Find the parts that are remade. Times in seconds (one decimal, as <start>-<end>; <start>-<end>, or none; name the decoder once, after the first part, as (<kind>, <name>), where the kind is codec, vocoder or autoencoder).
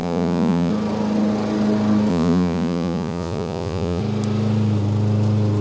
0.0-0.7 (vocoder, Vocos); 2.1-4.0